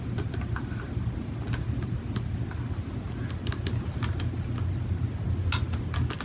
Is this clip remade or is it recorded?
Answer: recorded